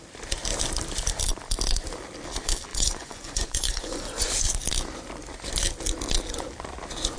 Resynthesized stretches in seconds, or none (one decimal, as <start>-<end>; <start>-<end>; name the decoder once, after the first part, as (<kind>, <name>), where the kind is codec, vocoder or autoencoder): 2.7-4.3 (vocoder, Vocos)